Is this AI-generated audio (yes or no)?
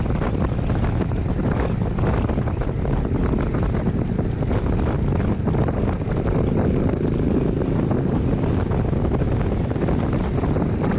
no